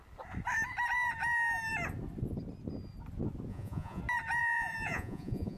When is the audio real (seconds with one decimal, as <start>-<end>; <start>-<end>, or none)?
0.0-3.5; 4.0-4.4